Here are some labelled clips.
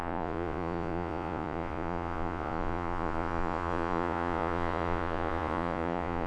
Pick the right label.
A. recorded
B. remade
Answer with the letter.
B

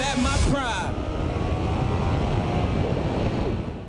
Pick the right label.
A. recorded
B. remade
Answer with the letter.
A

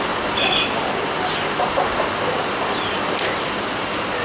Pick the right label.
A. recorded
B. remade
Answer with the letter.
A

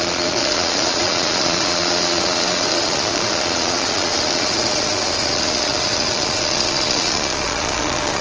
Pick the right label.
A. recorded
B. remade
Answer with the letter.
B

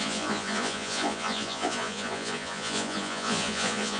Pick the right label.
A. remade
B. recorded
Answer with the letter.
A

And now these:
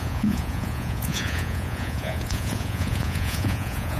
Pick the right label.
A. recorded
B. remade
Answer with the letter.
B